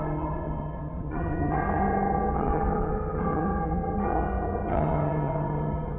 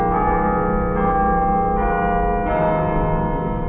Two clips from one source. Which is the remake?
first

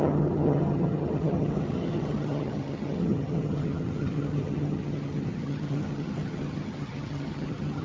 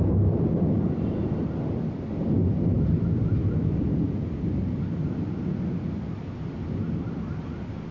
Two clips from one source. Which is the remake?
first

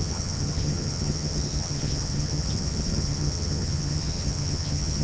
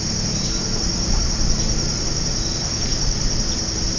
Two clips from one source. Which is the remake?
first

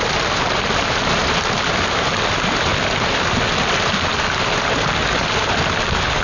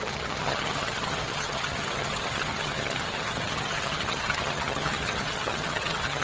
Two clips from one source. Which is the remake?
second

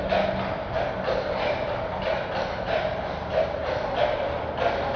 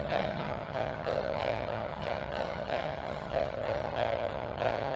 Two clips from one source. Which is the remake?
second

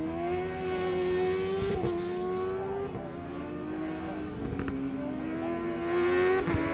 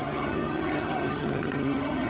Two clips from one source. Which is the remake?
second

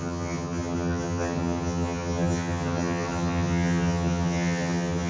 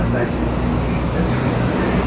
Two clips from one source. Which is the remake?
first